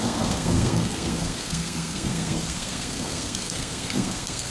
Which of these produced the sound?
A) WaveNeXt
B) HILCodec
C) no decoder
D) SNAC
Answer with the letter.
D